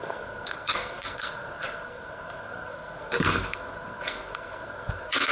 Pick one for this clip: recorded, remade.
remade